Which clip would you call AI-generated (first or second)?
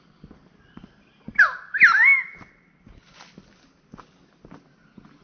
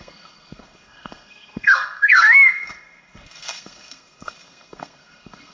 second